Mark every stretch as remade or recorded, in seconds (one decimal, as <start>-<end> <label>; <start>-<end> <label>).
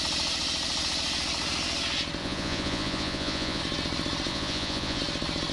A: 0.0-2.2 recorded; 2.2-3.6 remade; 3.6-4.3 recorded; 4.3-5.0 remade; 5.0-5.5 recorded